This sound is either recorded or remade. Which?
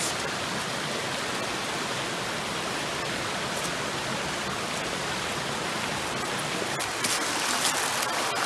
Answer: recorded